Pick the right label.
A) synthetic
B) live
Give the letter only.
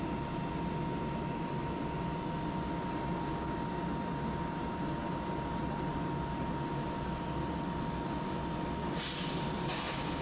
B